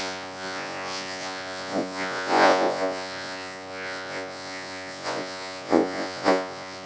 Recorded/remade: remade